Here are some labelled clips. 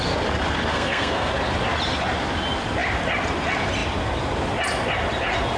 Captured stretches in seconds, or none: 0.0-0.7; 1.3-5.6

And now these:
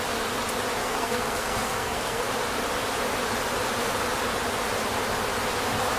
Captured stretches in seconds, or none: 0.0-0.8; 2.3-6.0

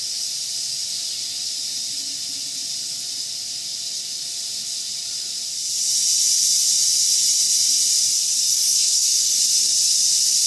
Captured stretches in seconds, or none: 0.0-8.5; 9.4-10.5